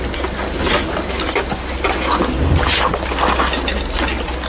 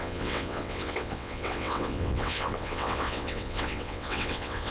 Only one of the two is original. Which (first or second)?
first